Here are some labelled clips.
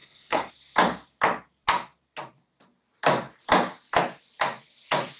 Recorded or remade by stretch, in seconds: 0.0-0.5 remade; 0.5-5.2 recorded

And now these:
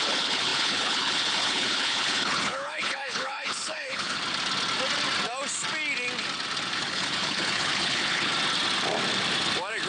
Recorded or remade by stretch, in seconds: 0.0-4.2 remade; 4.2-6.8 recorded; 6.8-8.3 remade; 8.3-9.9 recorded

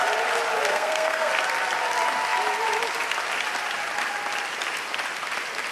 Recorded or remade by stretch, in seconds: 0.0-0.7 recorded; 0.7-1.3 remade; 1.3-5.7 recorded

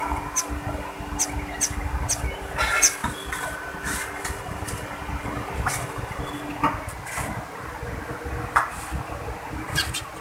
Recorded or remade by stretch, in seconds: 0.0-3.0 recorded; 3.0-6.3 remade; 6.3-10.2 recorded

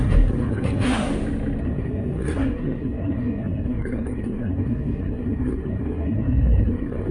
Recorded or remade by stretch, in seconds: 0.0-1.1 remade; 1.1-1.6 recorded; 1.6-7.1 remade

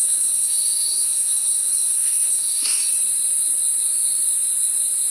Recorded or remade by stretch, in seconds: 0.0-2.8 remade; 2.8-5.1 recorded

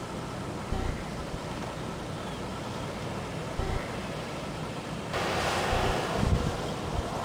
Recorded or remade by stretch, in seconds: 0.0-2.5 recorded; 2.5-3.1 remade; 3.1-4.0 recorded; 4.0-6.6 remade; 6.6-7.2 recorded